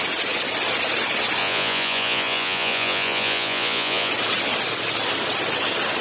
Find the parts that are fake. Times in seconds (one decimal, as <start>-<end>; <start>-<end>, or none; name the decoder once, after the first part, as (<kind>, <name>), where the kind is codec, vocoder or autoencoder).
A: 1.4-4.1 (vocoder, Vocos)